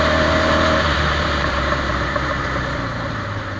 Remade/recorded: remade